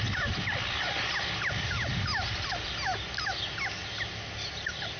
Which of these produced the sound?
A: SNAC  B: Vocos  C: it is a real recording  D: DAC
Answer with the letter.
C